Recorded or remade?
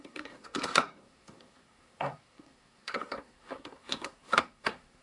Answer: remade